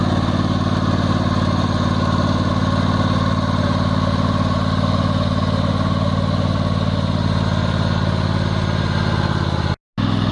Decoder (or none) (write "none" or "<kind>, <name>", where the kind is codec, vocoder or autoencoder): none